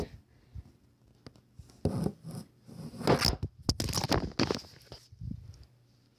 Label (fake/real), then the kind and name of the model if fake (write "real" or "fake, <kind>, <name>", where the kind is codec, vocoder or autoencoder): real